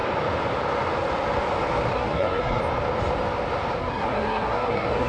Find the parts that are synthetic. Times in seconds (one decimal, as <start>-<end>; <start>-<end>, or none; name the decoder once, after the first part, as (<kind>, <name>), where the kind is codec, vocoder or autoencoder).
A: 1.9-2.6 (codec, SNAC); 3.8-5.1